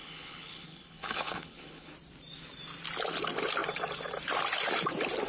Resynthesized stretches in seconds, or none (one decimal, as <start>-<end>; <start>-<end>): 0.0-1.9